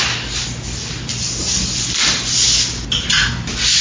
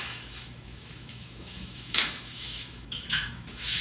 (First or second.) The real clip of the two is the first